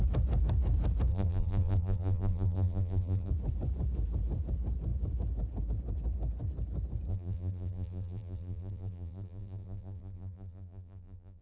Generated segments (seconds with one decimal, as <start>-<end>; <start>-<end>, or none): 1.1-3.3; 7.1-11.4